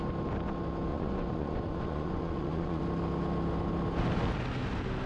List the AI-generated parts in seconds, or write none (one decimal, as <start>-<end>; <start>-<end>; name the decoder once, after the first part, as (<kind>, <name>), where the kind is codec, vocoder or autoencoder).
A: 0.9-2.8 (vocoder, Vocos)